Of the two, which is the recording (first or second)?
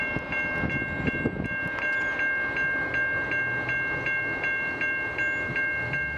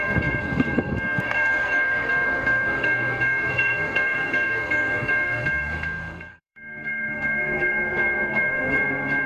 first